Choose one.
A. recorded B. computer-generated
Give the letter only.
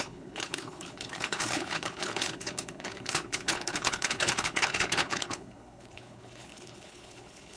B